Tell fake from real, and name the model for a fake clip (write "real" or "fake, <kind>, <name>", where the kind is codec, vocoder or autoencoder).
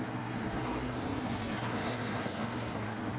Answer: fake, codec, SNAC